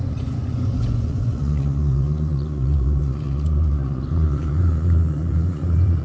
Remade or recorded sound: remade